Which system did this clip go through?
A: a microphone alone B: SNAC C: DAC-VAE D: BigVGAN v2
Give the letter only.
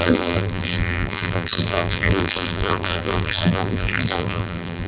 D